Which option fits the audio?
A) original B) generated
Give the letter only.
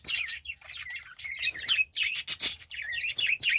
A